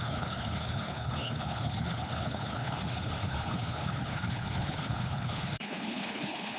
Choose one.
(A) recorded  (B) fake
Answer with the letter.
B